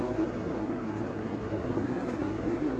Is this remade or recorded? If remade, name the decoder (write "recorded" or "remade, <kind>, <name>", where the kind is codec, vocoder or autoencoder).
remade, codec, SNAC